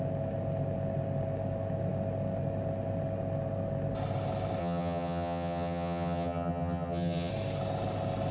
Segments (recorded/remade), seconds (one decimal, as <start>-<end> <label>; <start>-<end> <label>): 0.0-4.6 recorded; 4.6-7.3 remade; 7.3-8.3 recorded